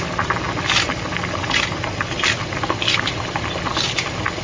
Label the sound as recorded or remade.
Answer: recorded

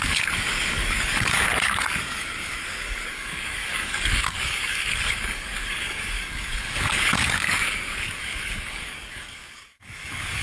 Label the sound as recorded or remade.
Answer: remade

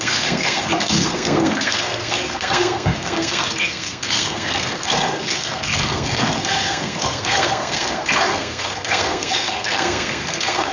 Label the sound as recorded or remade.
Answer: remade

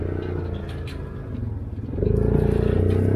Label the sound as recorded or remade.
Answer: recorded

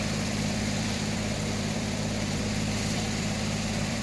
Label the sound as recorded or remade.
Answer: remade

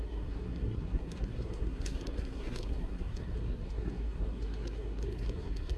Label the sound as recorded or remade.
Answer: remade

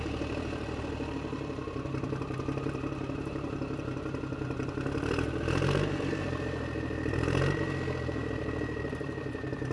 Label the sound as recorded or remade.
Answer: remade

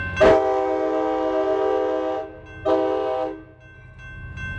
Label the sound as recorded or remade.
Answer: recorded